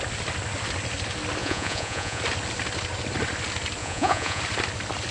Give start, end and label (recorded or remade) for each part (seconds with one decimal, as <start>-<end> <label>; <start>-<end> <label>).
0.0-1.4 recorded; 1.4-2.2 remade; 2.2-3.8 recorded; 3.8-4.4 remade; 4.4-5.1 recorded